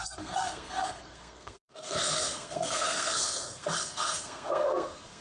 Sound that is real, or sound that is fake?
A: fake